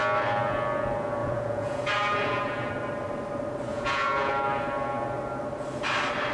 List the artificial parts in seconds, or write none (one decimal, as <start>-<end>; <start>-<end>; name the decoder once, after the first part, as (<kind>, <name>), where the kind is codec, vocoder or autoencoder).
1.2-2.7 (vocoder, Vocos); 3.7-4.3